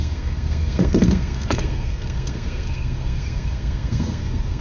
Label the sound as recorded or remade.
remade